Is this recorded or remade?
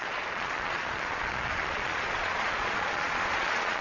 remade